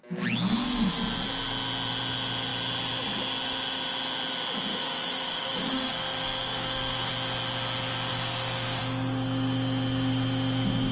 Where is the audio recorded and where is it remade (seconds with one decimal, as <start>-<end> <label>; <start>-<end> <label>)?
0.0-4.7 recorded; 4.7-7.1 remade; 7.1-8.1 recorded; 8.1-8.8 remade; 8.8-10.9 recorded